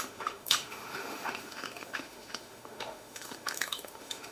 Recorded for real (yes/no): no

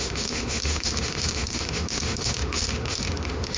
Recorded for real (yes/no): no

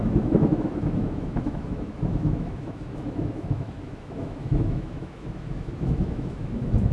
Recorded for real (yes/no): no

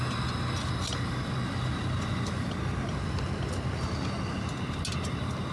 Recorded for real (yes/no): yes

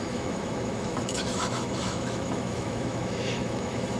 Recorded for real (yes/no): no